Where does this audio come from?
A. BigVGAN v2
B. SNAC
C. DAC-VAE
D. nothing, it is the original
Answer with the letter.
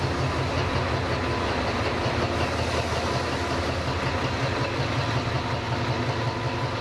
D